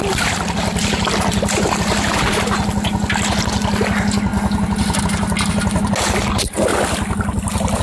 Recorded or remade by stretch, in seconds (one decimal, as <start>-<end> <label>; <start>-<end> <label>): 0.0-7.8 recorded